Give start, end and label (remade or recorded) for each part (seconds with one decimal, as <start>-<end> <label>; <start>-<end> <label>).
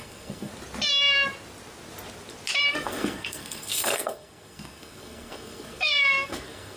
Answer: 0.0-0.5 remade; 0.5-2.7 recorded; 2.7-6.8 remade